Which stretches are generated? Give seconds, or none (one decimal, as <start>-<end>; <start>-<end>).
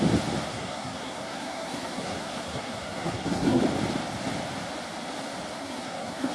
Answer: 0.5-3.6; 5.5-6.3